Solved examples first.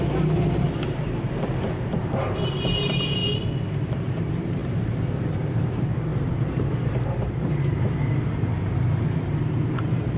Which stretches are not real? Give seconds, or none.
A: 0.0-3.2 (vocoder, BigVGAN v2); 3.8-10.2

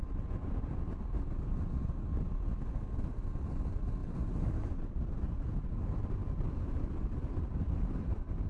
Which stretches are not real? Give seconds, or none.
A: none

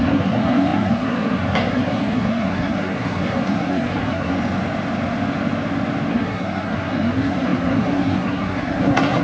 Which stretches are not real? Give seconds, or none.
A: 0.0-4.3 (codec, SNAC); 6.1-9.2

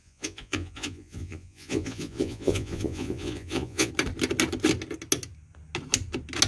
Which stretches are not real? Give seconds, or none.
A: 0.0-3.9 (vocoder, Vocos)

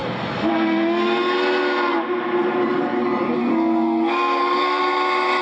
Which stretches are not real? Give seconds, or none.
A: 3.4-4.8 (codec, SNAC)